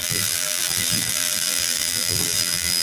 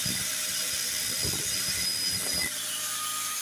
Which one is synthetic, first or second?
first